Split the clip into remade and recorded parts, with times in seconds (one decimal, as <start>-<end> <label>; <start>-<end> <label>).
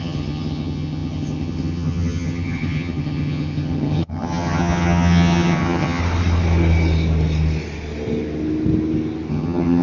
0.0-6.0 remade; 6.0-9.3 recorded; 9.3-9.8 remade